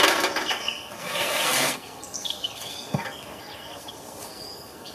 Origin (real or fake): fake